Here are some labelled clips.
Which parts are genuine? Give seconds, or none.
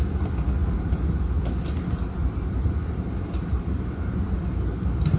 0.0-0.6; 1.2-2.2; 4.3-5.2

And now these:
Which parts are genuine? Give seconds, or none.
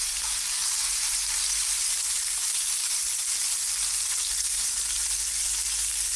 2.2-6.2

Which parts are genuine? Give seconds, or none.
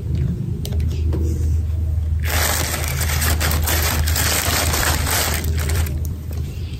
0.7-4.8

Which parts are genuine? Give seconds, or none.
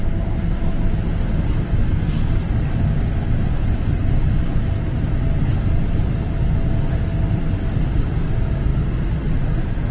0.0-9.9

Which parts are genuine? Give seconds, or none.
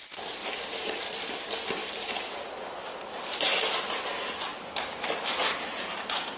0.0-0.4; 1.0-1.8; 3.7-5.7